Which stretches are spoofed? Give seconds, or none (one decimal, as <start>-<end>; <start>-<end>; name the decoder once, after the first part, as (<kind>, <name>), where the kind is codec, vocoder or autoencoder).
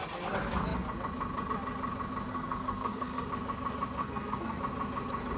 2.3-3.3 (codec, SNAC); 4.0-4.6